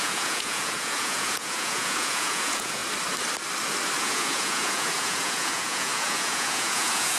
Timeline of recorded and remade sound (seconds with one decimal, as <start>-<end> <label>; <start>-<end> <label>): 0.0-2.8 remade; 2.8-4.0 recorded; 4.0-7.2 remade